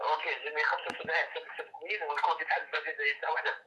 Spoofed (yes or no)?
yes